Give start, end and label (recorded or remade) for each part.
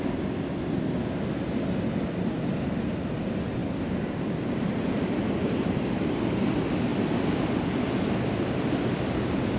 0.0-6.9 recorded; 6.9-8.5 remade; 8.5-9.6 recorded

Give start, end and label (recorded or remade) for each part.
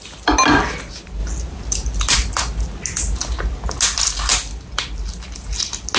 0.0-6.0 recorded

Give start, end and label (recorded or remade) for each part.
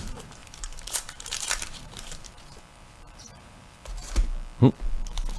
0.0-4.0 remade; 4.0-5.4 recorded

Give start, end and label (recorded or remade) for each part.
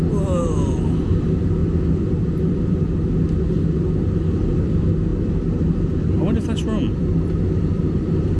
0.0-8.4 recorded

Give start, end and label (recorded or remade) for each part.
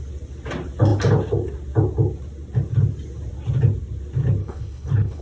0.0-4.4 recorded; 4.4-5.2 remade